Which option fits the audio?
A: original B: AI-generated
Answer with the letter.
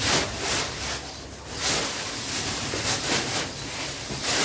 A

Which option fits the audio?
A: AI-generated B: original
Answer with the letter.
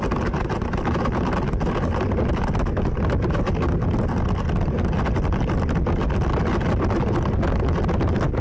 B